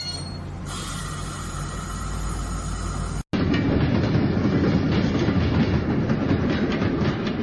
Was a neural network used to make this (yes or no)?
no